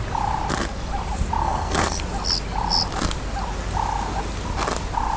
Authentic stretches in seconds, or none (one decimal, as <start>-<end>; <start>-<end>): 0.0-1.4; 2.0-5.2